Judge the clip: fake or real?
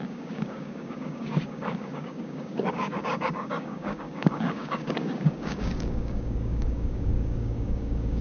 fake